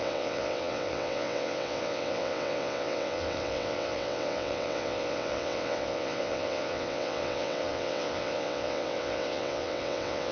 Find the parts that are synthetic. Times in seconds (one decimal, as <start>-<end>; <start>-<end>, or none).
0.0-10.3